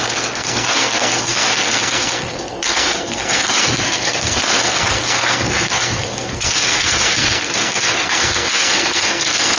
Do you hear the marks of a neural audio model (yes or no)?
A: yes